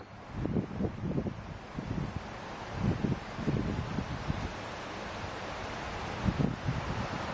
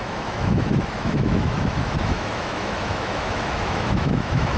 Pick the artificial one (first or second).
second